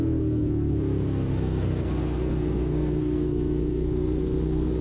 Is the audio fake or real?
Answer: fake